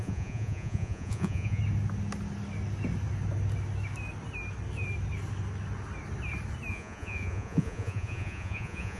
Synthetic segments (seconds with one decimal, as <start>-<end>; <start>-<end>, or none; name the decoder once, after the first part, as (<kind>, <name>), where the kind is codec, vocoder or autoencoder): 0.0-1.6 (vocoder, Vocos); 6.7-9.0